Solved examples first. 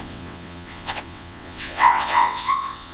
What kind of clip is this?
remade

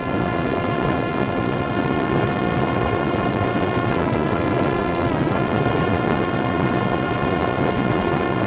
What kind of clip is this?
remade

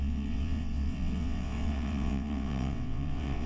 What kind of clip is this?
remade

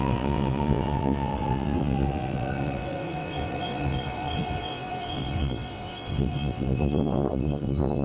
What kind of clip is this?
remade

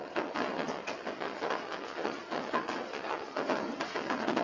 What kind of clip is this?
remade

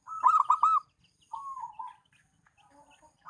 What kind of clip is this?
recorded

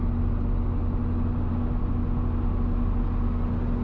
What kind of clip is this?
recorded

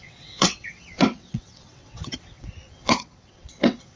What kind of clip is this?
remade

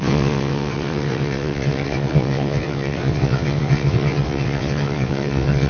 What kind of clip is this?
remade